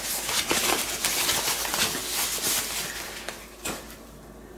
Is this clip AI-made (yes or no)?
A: no